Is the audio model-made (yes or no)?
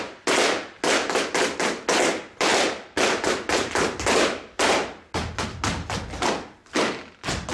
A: no